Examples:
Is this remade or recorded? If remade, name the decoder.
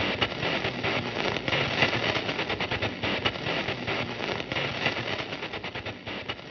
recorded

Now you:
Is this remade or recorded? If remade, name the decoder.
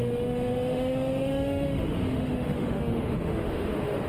remade, autoencoder, DAC-VAE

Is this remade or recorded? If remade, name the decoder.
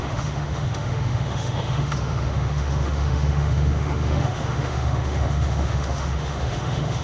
remade, autoencoder, DAC-VAE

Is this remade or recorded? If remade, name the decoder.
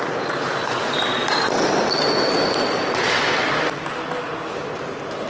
recorded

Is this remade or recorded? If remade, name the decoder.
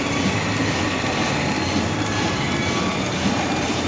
recorded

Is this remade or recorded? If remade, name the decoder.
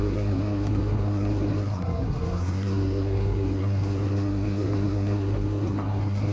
remade, codec, SNAC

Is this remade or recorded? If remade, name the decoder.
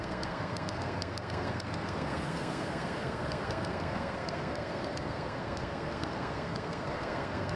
remade, codec, SNAC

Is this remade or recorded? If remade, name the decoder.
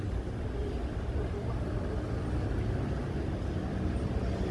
recorded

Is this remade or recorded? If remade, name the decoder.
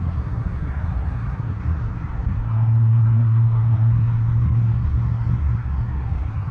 remade, codec, SNAC